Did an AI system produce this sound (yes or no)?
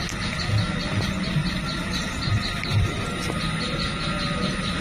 no